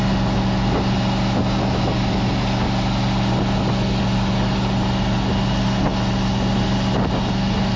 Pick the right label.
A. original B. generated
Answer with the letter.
A